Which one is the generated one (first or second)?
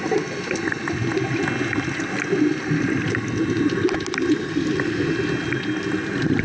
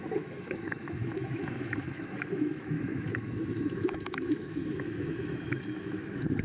second